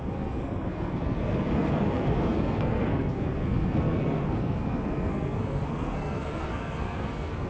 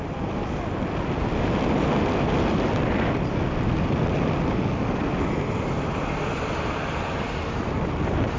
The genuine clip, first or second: second